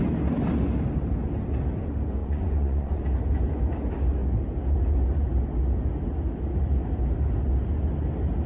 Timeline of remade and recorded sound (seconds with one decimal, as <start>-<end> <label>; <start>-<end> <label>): 0.0-2.2 recorded; 2.2-3.0 remade; 3.0-8.5 recorded